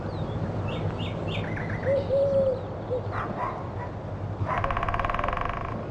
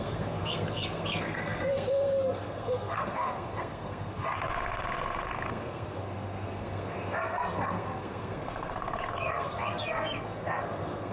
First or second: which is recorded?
first